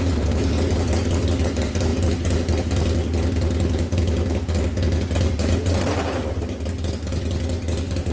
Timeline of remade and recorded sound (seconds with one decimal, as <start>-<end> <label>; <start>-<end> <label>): 0.0-8.1 recorded